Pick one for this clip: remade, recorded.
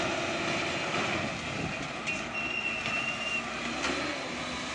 recorded